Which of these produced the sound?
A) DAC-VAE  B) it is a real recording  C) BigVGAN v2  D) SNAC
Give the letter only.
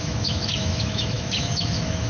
A